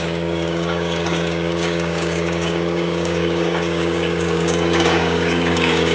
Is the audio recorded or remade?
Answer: remade